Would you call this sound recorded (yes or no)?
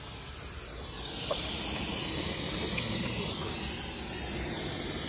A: yes